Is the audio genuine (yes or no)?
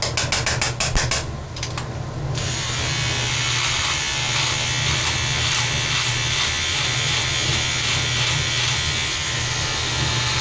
yes